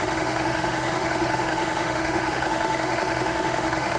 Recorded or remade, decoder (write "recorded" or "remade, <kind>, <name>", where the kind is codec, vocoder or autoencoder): remade, autoencoder, DAC-VAE